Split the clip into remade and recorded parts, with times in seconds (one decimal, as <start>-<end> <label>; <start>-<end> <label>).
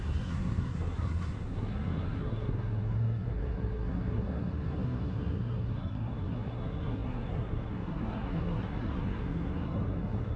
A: 0.0-10.4 remade